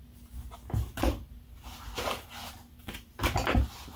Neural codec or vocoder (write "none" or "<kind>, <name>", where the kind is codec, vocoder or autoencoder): none